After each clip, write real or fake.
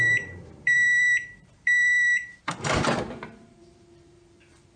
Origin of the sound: fake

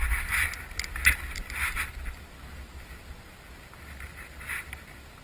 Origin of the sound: real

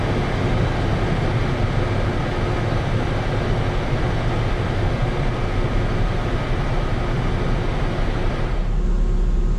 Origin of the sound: real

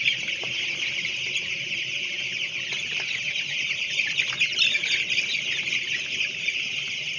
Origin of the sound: real